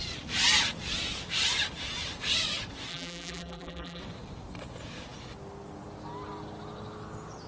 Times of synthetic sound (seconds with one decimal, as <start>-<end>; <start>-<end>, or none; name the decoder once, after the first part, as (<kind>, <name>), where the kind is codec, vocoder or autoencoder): 2.9-4.0 (vocoder, BigVGAN v2)